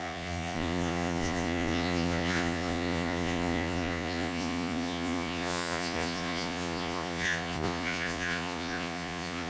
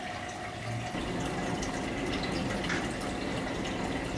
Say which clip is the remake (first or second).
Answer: first